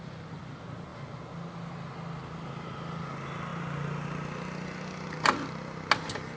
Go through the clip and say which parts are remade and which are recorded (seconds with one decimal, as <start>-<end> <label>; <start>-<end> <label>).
0.0-6.4 recorded